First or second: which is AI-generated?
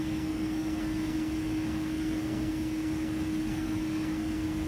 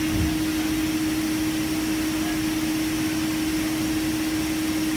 first